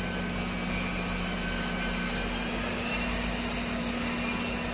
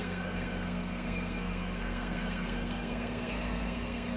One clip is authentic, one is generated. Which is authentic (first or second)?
first